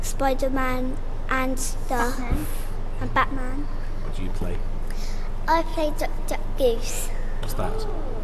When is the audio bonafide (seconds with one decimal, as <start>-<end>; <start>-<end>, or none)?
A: 0.0-8.2